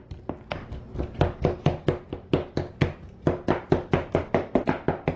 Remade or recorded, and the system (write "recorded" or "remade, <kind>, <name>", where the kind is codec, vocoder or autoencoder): recorded